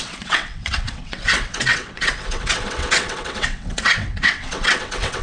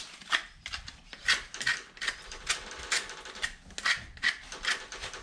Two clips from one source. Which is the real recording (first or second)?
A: second